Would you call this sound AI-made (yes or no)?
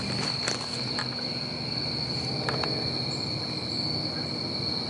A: no